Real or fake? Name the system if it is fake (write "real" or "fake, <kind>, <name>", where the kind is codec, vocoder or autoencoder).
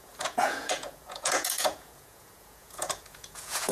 fake, vocoder, Vocos